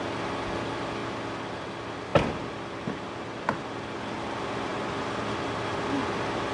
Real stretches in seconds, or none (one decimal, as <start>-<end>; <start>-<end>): 0.0-6.5